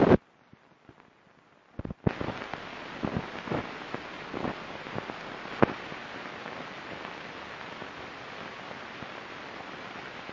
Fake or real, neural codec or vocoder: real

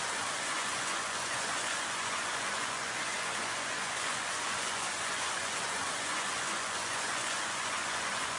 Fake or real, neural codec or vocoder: fake, vocoder, Vocos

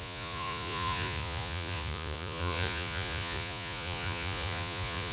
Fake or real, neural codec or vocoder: fake, vocoder, Vocos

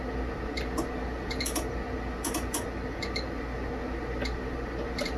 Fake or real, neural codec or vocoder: real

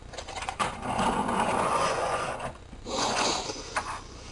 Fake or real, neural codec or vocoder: fake, vocoder, Vocos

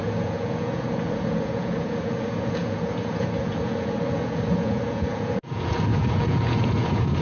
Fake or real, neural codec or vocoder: fake, vocoder, Vocos